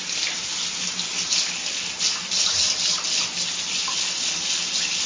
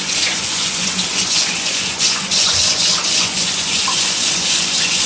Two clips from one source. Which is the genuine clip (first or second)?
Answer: first